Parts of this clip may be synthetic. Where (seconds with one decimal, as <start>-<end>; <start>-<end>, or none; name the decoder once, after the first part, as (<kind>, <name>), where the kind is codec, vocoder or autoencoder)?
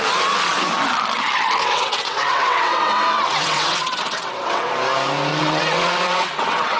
1.6-4.7 (vocoder, WaveNeXt); 5.3-6.8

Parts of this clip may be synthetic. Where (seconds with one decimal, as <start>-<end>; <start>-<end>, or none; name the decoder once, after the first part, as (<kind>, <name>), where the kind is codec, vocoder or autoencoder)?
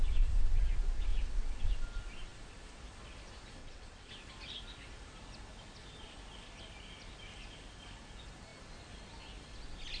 1.1-1.6 (vocoder, WaveNeXt); 3.6-4.1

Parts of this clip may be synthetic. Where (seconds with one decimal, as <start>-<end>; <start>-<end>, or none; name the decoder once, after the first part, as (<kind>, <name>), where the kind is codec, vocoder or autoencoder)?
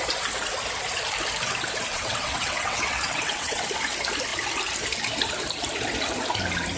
1.9-3.6 (vocoder, WaveNeXt)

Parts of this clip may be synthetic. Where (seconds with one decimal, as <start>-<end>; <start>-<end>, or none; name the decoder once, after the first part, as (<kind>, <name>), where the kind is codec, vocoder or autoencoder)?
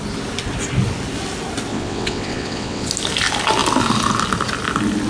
1.7-2.9 (vocoder, WaveNeXt)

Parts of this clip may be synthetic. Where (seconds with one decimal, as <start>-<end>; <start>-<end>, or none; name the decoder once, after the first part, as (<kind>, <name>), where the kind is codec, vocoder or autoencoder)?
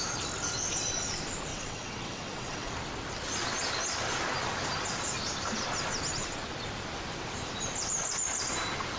1.5-2.7 (vocoder, WaveNeXt)